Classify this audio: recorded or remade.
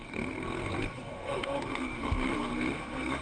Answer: remade